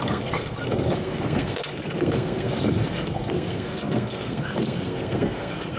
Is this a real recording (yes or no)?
no